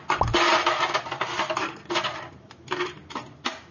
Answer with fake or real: real